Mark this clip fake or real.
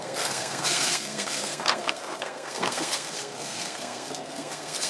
fake